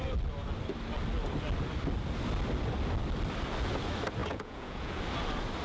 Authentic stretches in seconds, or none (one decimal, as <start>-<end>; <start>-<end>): 0.0-4.2; 5.0-5.6